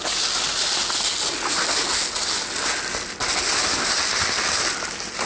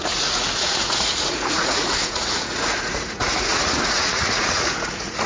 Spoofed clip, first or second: second